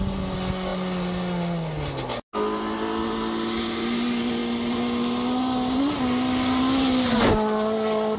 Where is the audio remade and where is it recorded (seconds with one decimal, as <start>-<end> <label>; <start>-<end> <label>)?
0.0-8.2 recorded